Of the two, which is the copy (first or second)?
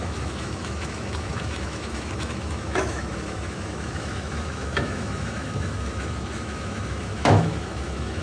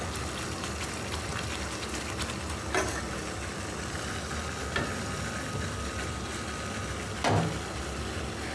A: first